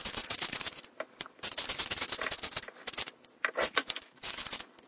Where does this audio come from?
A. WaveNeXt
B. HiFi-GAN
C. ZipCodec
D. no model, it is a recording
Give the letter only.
D